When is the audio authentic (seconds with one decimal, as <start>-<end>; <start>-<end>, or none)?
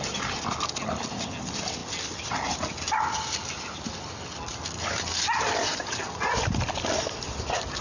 0.0-7.8